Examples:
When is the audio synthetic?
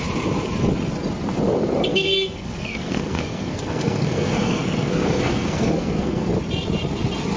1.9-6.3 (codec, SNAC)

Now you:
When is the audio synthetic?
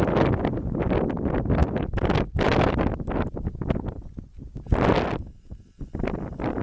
none